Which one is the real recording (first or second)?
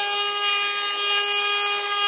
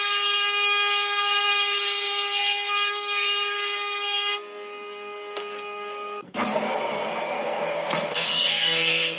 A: first